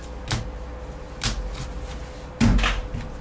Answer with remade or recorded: recorded